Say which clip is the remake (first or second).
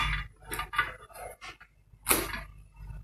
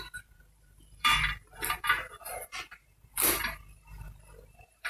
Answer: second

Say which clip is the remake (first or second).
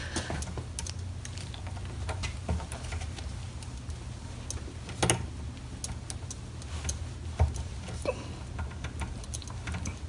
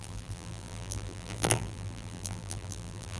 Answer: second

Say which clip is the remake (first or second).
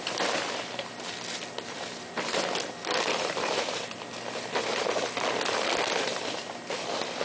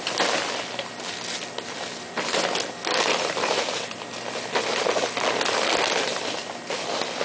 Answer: first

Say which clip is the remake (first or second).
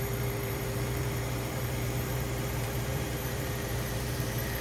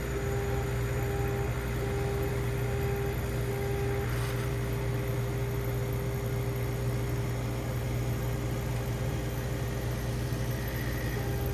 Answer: first